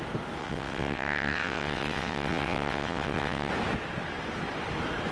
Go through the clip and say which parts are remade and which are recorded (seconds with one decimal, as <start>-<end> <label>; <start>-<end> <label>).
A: 0.0-0.4 recorded; 0.4-3.5 remade; 3.5-5.1 recorded